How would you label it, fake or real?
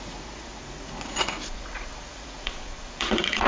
fake